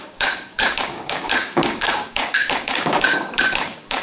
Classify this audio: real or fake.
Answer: fake